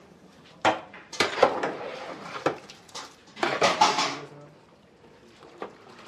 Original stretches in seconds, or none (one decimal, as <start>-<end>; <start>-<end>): 3.2-5.4